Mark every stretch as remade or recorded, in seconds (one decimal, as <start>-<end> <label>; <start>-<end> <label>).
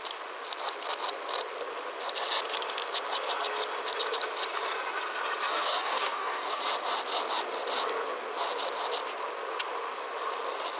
0.0-5.5 recorded; 5.5-6.6 remade; 6.6-10.8 recorded